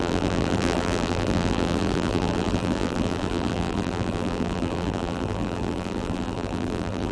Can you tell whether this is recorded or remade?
remade